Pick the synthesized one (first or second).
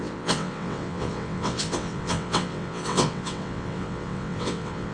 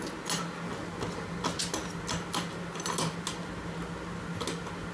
first